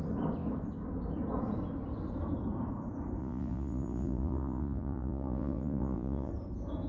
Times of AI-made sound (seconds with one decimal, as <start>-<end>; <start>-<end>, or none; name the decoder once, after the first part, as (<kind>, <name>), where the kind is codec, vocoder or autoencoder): 3.2-6.3 (vocoder, Vocos)